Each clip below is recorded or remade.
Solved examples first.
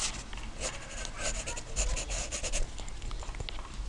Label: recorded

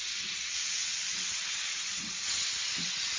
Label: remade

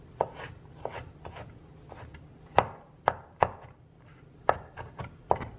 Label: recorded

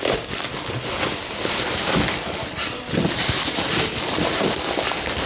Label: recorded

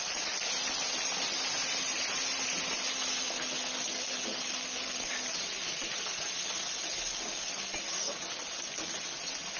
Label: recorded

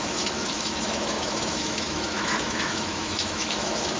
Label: remade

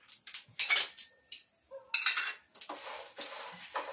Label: recorded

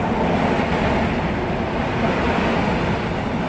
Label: recorded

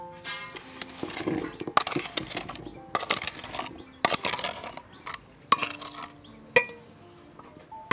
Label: recorded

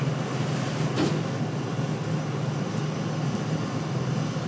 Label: recorded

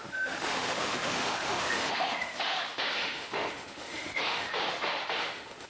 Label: remade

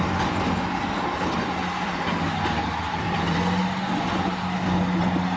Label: recorded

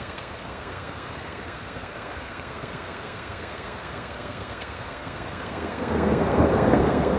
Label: remade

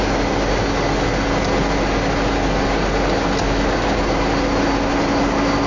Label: recorded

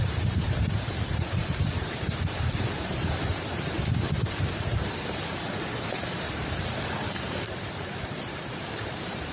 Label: remade